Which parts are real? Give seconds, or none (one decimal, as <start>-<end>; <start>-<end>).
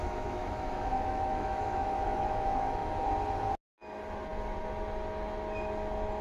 2.8-6.2